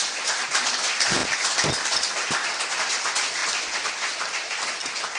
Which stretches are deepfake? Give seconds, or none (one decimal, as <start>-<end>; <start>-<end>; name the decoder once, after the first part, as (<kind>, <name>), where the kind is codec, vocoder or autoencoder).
none